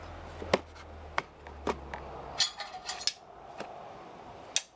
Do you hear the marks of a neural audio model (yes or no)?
no